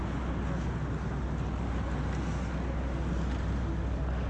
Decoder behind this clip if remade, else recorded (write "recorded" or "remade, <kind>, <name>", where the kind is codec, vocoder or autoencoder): recorded